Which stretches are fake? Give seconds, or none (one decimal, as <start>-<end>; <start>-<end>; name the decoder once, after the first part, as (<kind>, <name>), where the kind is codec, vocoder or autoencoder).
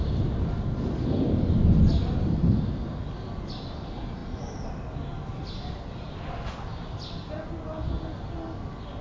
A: none